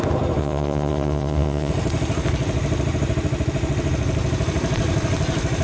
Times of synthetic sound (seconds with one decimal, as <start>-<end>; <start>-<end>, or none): 0.4-1.7